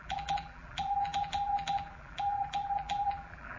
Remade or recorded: remade